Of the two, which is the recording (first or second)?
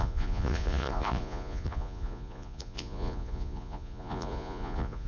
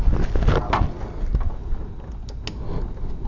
second